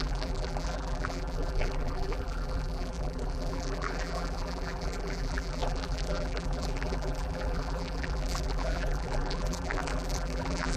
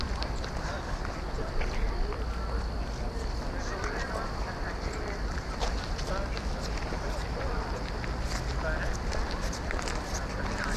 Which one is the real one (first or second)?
second